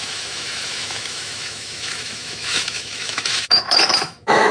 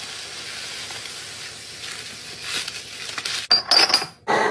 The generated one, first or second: first